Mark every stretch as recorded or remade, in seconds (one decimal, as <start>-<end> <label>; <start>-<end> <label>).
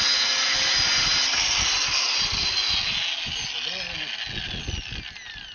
0.0-5.5 recorded